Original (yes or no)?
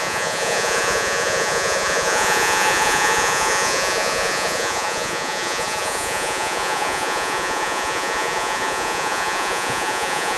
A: no